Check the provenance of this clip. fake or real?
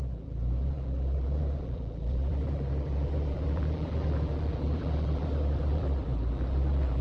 fake